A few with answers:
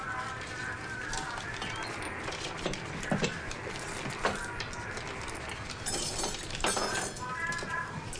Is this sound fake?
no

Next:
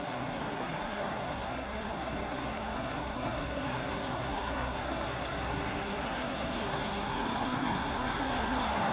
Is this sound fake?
yes